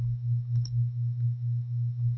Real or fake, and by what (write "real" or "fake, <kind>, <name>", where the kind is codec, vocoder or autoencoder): fake, autoencoder, DAC-VAE